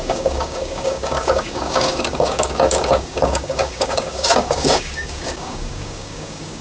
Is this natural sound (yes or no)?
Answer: no